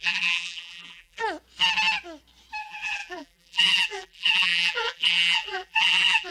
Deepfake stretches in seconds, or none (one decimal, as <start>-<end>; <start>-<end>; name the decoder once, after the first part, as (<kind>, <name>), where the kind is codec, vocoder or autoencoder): 0.0-1.2 (vocoder, BigVGAN v2); 2.6-6.3